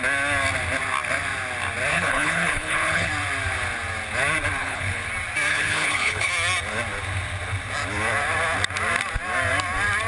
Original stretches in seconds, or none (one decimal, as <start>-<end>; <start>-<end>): 0.0-1.9; 3.1-4.6; 5.1-5.5; 6.3-10.1